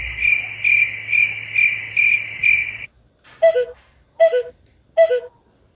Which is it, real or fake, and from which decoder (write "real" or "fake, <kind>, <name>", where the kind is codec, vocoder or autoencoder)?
real